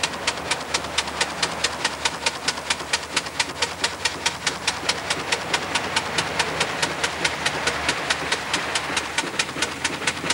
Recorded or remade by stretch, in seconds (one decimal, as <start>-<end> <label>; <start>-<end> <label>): 0.0-6.8 recorded; 6.8-9.3 remade; 9.3-10.3 recorded